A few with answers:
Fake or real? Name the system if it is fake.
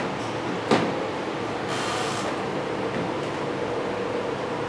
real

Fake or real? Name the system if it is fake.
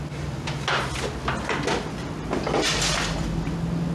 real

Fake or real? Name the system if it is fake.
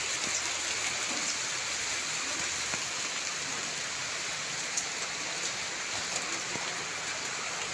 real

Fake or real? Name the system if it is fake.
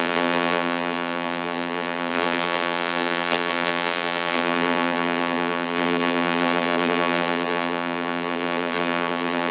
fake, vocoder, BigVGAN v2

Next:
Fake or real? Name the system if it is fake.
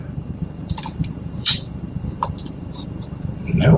fake, vocoder, BigVGAN v2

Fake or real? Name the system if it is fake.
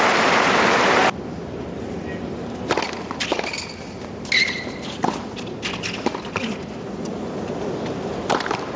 real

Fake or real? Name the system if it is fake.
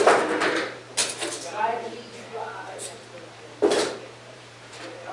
fake, vocoder, BigVGAN v2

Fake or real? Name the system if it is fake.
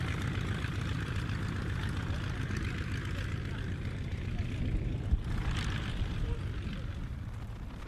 real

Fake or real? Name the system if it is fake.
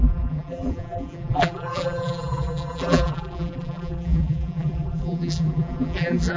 fake, vocoder, BigVGAN v2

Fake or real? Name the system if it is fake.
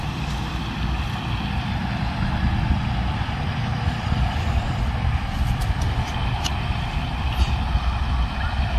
fake, vocoder, BigVGAN v2